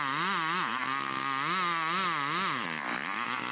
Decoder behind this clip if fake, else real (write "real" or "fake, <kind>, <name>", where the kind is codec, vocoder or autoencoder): real